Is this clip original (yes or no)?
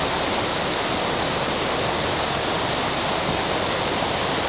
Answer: yes